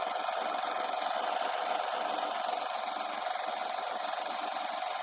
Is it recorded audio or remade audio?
recorded